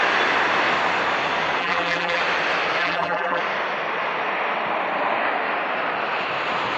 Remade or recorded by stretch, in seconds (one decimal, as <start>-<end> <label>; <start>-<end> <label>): 0.0-1.6 recorded; 1.6-2.2 remade; 2.2-2.8 recorded; 2.8-3.4 remade; 3.4-6.8 recorded